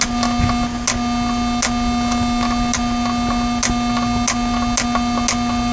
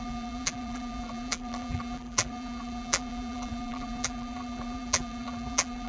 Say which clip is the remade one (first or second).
second